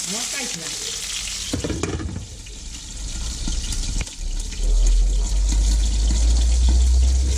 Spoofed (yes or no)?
no